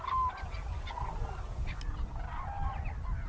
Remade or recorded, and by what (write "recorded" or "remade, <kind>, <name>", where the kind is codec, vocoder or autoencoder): recorded